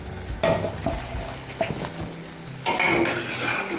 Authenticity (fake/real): real